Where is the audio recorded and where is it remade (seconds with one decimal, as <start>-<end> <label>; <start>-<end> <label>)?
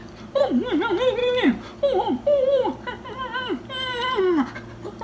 0.0-1.2 recorded; 1.2-4.2 remade; 4.2-5.0 recorded